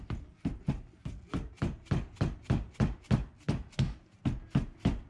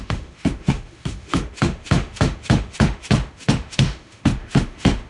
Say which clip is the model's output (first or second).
second